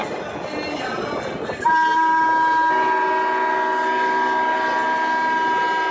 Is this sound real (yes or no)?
yes